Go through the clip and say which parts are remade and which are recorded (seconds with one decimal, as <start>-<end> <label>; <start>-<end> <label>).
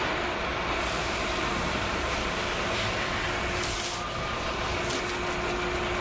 0.0-0.5 recorded; 0.5-2.5 remade; 2.5-6.0 recorded